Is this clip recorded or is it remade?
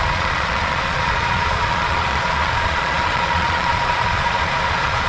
remade